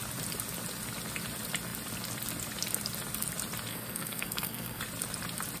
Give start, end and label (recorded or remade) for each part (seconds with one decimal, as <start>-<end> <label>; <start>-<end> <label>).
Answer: 0.0-3.7 recorded; 3.7-4.8 remade; 4.8-5.6 recorded